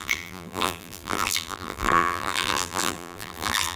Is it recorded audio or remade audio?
remade